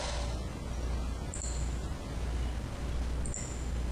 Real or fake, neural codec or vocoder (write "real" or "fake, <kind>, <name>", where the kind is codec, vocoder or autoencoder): real